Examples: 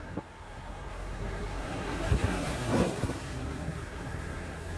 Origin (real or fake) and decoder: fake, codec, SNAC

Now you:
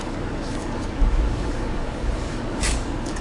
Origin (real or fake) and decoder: fake, codec, DAC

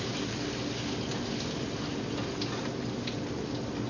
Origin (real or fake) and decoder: real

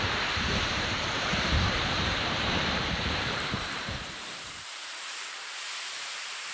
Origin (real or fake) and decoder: fake, vocoder, BigVGAN v2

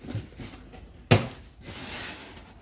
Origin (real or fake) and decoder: real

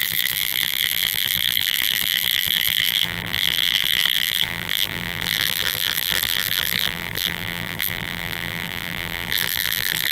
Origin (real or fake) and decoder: fake, vocoder, BigVGAN v2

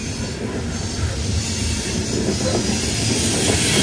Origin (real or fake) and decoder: real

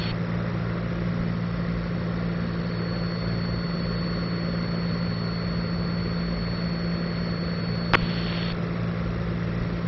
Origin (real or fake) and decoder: real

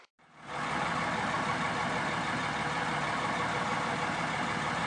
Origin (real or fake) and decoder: real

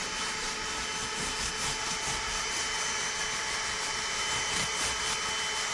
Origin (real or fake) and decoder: real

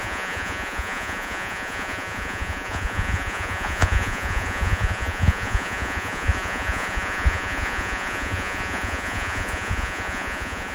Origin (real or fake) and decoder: fake, vocoder, Vocos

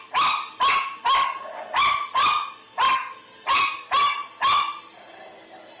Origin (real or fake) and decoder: real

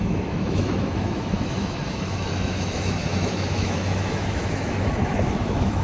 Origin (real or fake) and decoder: fake, autoencoder, DAC-VAE